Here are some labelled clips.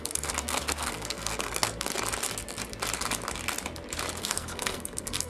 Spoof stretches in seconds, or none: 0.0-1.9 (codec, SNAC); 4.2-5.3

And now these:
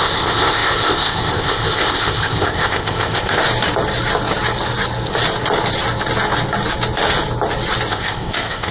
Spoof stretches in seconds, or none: 0.0-3.4 (codec, ZipCodec); 7.9-8.7

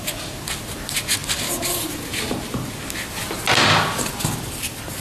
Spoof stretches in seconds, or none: none